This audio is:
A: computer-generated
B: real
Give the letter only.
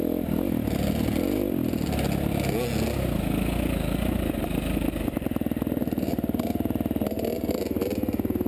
B